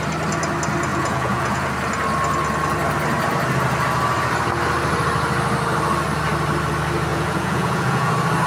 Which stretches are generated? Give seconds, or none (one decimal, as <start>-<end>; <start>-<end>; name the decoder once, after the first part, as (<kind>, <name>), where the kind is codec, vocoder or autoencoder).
0.9-1.7 (vocoder, Vocos); 7.1-8.1